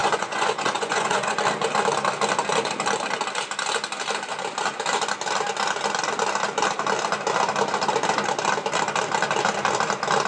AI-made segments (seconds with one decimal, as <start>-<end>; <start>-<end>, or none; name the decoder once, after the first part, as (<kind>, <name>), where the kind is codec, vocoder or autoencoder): 0.0-1.4 (vocoder, Vocos)